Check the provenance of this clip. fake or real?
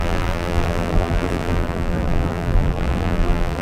fake